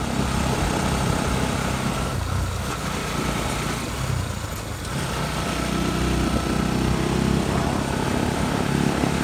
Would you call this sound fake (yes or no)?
no